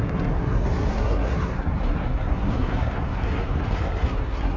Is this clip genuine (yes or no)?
no